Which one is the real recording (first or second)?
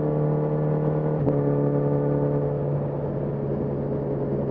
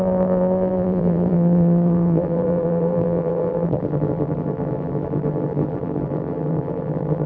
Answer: first